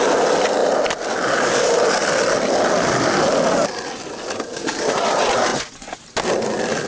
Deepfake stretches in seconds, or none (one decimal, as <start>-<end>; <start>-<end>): 5.5-6.0